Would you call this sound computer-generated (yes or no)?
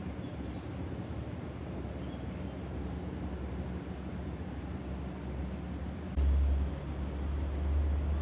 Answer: no